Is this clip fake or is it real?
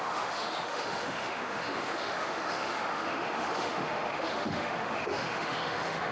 fake